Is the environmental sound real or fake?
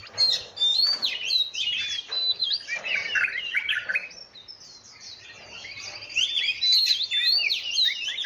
real